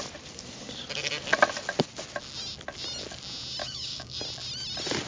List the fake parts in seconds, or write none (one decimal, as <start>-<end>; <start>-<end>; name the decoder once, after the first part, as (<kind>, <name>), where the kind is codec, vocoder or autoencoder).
3.6-4.2 (codec, DAC)